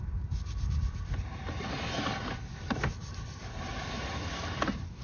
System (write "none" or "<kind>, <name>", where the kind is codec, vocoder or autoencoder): vocoder, BigVGAN v2